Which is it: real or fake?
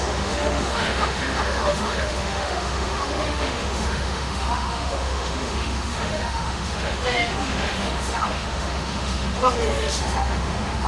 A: fake